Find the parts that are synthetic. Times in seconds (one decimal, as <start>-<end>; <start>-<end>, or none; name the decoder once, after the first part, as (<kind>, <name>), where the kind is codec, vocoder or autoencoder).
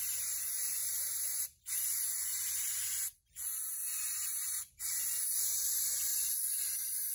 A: 0.0-0.8 (vocoder, BigVGAN v2); 1.4-6.1